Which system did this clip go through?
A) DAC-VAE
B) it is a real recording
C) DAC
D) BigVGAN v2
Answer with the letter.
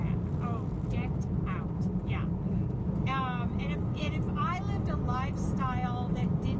B